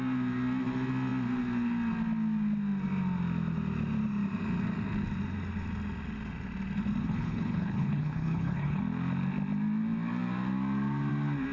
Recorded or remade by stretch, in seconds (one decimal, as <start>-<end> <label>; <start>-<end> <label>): 0.0-7.0 recorded; 7.0-8.8 remade; 8.8-11.5 recorded